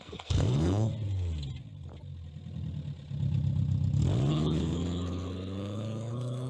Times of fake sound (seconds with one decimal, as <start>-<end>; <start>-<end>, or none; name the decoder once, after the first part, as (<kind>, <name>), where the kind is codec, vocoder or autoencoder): 0.0-0.9 (codec, SNAC); 4.3-6.5